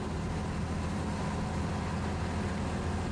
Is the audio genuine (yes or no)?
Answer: yes